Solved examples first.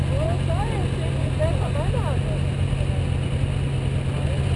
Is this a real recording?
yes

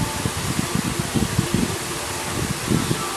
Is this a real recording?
yes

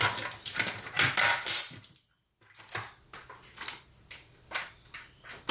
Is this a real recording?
yes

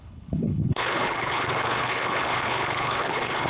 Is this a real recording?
no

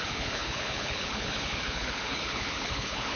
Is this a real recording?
no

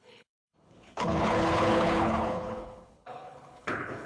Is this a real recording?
no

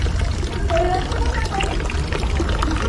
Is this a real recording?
yes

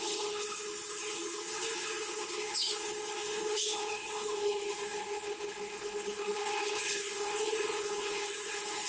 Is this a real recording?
no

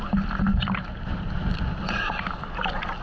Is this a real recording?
yes